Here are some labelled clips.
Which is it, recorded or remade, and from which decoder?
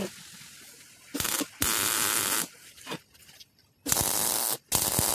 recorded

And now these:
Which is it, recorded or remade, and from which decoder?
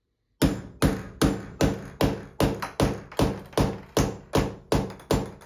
recorded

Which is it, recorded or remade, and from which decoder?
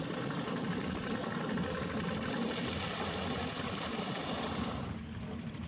recorded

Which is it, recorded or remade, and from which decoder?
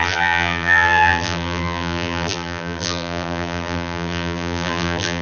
remade, vocoder, BigVGAN v2